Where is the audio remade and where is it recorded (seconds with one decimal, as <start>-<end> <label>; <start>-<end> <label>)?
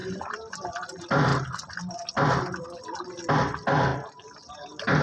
0.0-0.7 remade; 0.7-5.0 recorded